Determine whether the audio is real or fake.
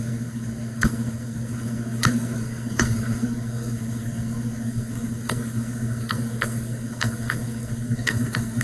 fake